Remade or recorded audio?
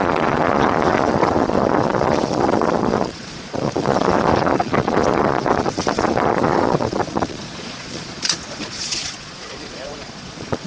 remade